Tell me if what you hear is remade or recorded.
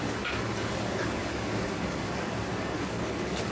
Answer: remade